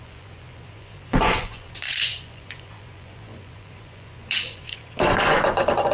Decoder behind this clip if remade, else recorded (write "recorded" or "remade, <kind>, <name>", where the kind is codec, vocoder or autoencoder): remade, vocoder, Vocos